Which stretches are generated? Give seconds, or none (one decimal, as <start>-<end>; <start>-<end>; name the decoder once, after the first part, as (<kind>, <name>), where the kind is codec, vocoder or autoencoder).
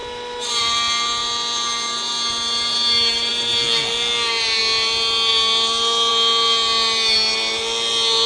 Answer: none